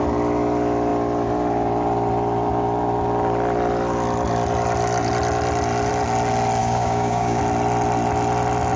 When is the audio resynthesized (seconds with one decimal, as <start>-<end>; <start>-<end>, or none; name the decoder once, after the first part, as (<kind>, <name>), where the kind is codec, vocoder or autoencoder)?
6.6-7.4 (codec, DAC)